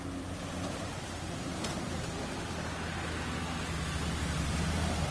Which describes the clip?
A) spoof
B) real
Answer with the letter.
B